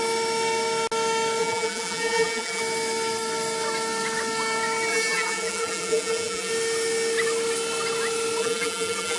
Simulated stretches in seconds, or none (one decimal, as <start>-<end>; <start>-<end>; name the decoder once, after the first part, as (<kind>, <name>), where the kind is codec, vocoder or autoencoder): 1.4-2.6 (vocoder, BigVGAN v2); 4.9-6.5; 8.4-9.2